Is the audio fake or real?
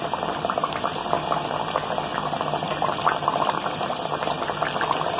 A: real